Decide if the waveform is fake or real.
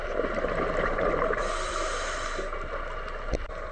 real